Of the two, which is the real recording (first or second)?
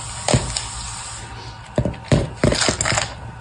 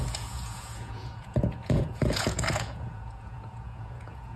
first